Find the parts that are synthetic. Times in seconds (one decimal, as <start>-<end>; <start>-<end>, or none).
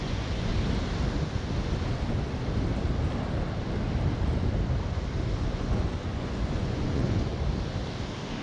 0.0-0.5; 5.5-7.3